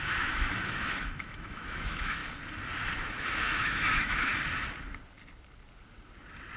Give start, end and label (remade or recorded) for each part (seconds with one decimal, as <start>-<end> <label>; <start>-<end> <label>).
0.0-2.2 remade; 2.2-3.2 recorded; 3.2-4.3 remade; 4.3-6.6 recorded